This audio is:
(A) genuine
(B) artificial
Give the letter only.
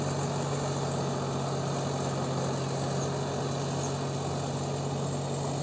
A